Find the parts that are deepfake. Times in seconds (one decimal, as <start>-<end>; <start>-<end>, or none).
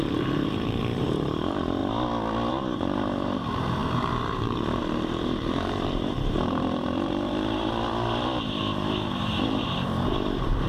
0.0-1.8; 2.5-10.7